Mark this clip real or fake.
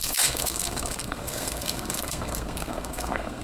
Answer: fake